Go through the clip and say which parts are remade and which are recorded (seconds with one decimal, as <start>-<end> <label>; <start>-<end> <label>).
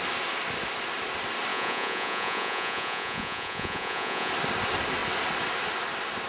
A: 0.0-1.5 recorded; 1.5-4.3 remade; 4.3-6.3 recorded